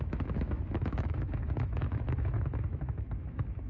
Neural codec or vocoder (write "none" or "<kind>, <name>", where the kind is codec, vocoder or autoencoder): autoencoder, DAC-VAE